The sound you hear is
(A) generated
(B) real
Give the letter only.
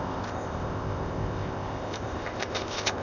A